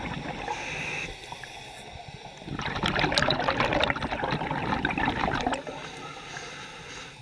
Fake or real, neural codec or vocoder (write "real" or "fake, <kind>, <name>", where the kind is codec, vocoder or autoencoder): real